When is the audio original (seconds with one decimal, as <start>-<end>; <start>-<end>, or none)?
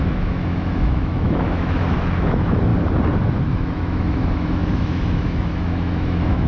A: 2.7-3.4